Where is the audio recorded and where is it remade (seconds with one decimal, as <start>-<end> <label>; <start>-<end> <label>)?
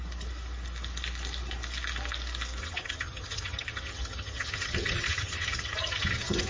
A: 0.0-2.6 recorded; 2.6-6.5 remade